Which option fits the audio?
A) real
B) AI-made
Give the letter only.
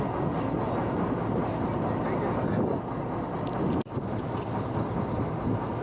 A